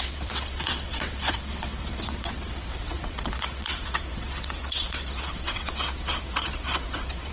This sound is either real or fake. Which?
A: fake